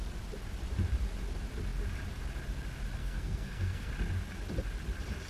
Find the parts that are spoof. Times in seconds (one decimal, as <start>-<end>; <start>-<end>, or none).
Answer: 3.0-3.9